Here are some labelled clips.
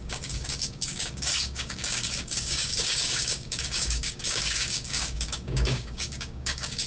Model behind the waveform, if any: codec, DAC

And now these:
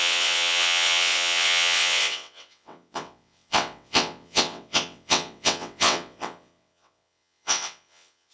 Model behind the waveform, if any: vocoder, WaveNeXt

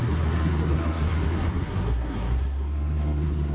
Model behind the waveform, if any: codec, SNAC